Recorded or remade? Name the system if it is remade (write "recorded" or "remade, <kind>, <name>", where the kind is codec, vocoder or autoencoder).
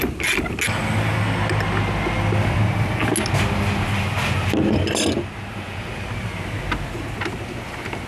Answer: recorded